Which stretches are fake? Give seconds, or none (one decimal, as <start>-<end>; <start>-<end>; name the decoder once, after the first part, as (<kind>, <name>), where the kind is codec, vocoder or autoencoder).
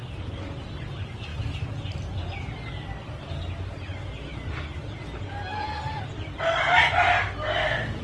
none